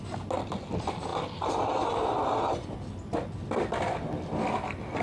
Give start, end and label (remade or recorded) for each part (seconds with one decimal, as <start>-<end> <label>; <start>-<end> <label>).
0.0-5.0 recorded

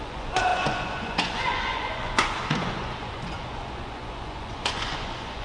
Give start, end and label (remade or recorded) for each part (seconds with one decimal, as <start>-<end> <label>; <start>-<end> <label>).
0.0-5.4 remade

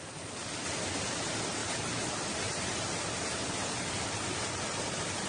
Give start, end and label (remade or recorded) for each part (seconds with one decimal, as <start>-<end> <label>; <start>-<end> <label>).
0.0-5.3 recorded

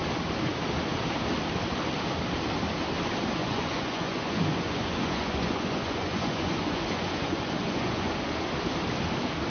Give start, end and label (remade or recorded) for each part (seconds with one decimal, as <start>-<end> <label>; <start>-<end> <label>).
0.0-3.4 recorded; 3.4-8.1 remade; 8.1-9.5 recorded

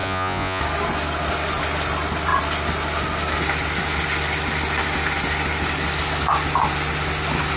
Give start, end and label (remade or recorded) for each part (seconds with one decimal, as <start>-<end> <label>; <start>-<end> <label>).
0.0-0.6 remade; 0.6-7.6 recorded

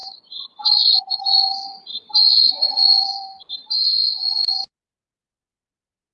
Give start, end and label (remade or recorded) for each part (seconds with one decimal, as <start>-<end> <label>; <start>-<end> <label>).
0.0-1.8 remade; 1.8-2.2 recorded; 2.2-3.5 remade; 3.5-4.0 recorded; 4.0-4.7 remade; 4.7-6.1 recorded

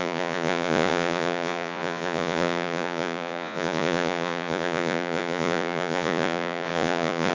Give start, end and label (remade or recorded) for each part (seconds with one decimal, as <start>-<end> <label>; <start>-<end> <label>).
0.0-7.3 remade